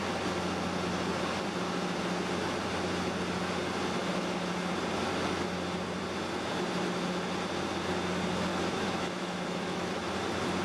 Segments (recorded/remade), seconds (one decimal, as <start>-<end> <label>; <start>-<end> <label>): 0.0-8.5 recorded; 8.5-10.1 remade; 10.1-10.6 recorded